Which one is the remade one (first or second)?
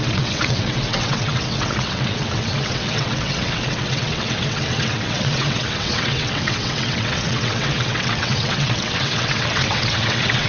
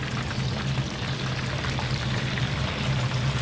first